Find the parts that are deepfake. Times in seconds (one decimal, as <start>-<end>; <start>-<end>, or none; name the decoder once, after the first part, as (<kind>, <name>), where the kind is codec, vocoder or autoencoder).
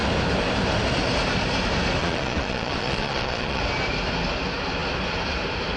2.0-3.6 (vocoder, Vocos)